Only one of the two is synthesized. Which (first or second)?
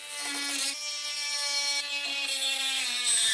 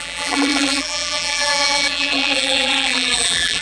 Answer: second